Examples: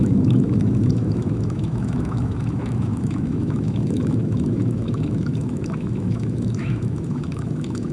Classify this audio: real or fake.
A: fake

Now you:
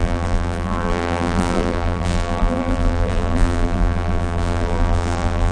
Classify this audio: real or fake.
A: fake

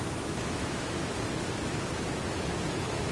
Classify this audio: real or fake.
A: fake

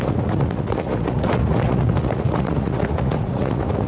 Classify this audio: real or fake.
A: fake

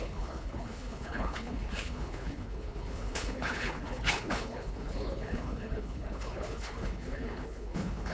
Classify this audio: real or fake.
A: fake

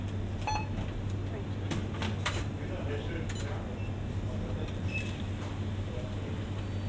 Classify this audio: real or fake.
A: real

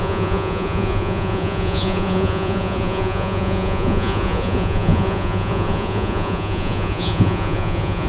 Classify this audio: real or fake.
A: fake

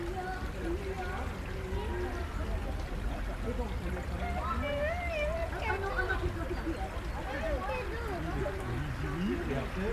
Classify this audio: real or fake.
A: real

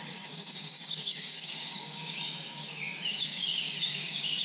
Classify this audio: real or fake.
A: fake